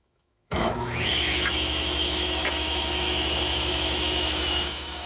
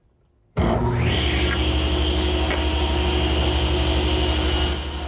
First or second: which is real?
second